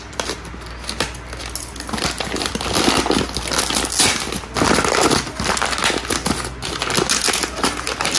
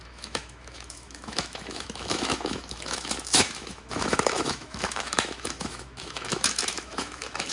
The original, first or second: first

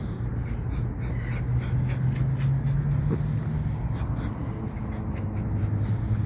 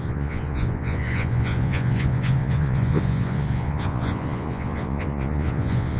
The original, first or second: first